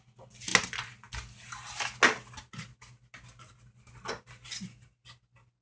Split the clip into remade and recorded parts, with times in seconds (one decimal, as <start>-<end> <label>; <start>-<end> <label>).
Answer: 0.0-5.6 recorded